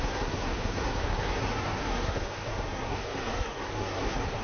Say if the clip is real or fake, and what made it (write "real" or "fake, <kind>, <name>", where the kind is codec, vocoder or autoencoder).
fake, codec, SNAC